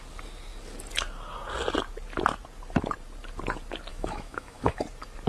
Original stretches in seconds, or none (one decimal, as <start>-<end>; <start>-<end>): 0.0-3.9; 4.8-5.3